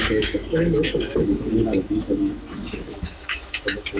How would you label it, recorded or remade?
remade